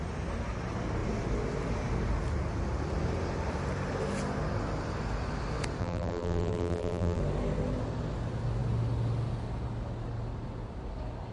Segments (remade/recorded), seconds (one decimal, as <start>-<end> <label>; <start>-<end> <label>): 0.0-5.8 recorded; 5.8-7.2 remade; 7.2-11.3 recorded